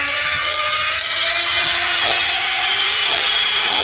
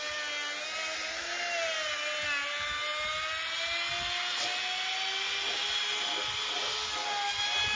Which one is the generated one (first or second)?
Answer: first